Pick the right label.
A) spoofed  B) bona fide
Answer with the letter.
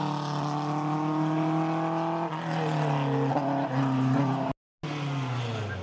B